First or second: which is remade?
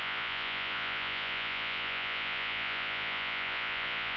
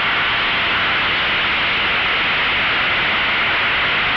first